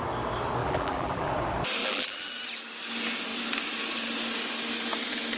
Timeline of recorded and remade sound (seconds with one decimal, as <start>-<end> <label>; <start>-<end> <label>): 0.0-0.6 recorded; 0.6-1.3 remade; 1.3-1.8 recorded; 1.8-2.3 remade; 2.3-5.4 recorded